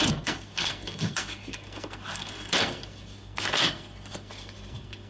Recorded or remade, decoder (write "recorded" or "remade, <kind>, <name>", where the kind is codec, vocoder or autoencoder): remade, codec, SNAC